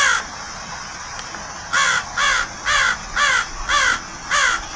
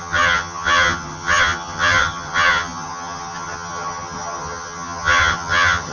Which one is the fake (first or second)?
second